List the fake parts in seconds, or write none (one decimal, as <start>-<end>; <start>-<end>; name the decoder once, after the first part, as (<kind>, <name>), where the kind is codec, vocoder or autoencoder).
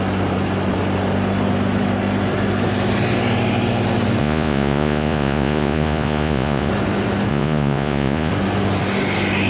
4.2-6.7 (vocoder, Vocos); 7.3-8.3